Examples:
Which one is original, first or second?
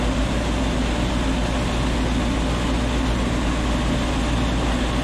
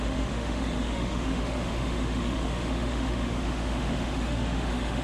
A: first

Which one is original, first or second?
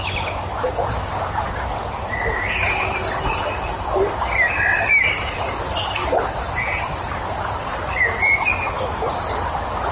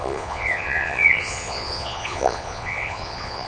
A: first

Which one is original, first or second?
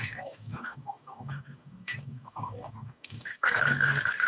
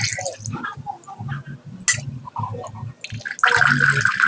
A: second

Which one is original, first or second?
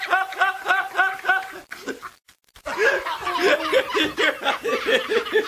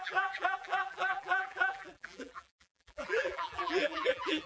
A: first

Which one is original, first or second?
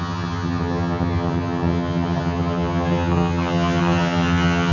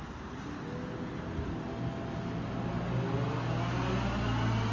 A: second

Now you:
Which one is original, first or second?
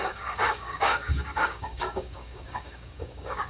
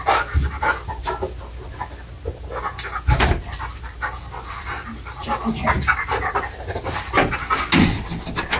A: second